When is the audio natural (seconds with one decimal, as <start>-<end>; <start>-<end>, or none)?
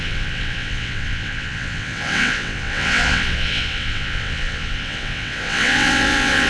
none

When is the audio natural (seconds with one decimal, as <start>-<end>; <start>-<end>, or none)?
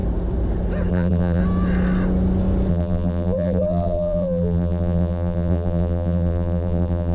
0.0-0.9; 1.4-2.7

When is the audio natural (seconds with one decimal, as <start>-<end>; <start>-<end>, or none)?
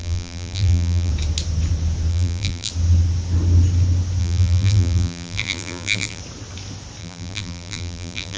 1.1-2.1; 2.7-4.2; 6.2-7.0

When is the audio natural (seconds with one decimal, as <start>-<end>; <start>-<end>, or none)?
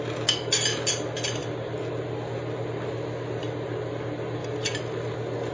0.0-5.5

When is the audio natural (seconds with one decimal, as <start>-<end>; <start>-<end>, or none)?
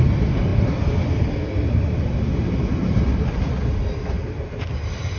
0.0-5.2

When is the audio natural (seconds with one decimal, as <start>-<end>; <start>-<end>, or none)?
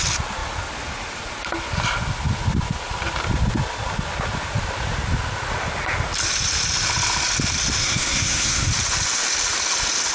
0.0-7.8; 8.7-10.1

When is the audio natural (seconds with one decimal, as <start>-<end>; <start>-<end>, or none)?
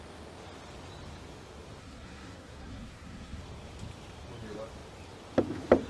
0.0-1.8; 3.4-5.9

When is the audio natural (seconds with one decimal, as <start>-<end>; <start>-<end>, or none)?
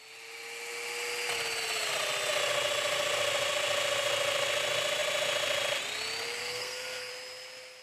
0.0-6.4; 7.1-7.8